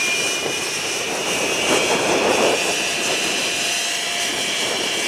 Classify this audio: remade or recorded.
remade